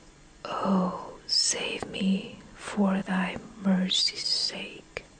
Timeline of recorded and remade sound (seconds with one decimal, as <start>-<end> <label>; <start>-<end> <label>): 0.0-5.2 remade